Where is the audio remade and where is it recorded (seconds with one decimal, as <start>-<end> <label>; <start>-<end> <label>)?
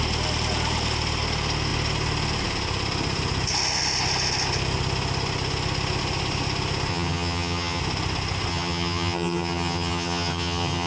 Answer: 0.0-6.9 recorded; 6.9-7.8 remade; 7.8-8.5 recorded; 8.5-10.9 remade